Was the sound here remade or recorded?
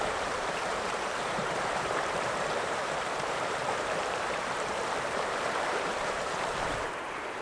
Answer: remade